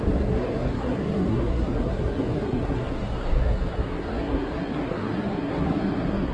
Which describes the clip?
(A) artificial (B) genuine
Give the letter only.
A